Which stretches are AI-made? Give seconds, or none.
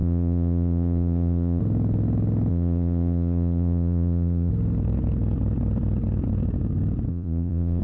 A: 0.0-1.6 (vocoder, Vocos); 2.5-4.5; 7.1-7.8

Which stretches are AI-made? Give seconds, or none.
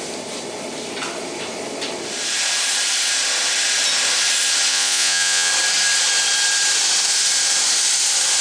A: 4.7-5.5 (vocoder, Vocos)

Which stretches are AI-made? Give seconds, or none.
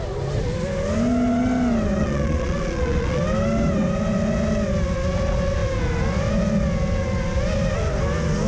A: 2.0-3.2 (vocoder, Vocos)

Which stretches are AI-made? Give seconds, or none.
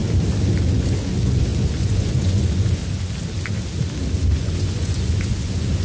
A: 0.6-2.8 (vocoder, Vocos); 4.3-5.8